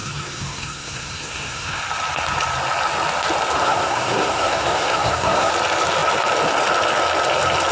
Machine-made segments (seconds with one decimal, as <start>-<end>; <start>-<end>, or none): 0.0-1.8; 3.6-5.5